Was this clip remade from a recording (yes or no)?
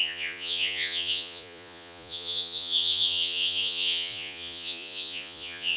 yes